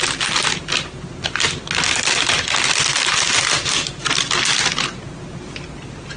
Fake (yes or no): no